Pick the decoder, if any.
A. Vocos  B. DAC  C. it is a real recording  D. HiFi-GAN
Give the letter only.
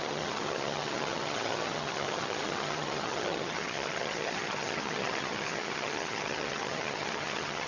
D